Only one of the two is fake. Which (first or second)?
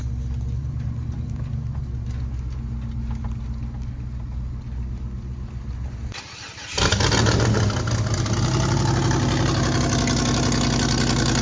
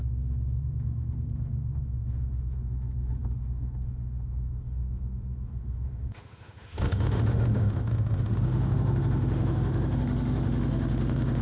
second